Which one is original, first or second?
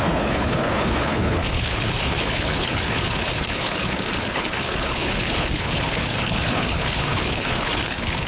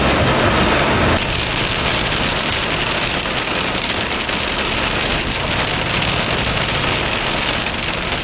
second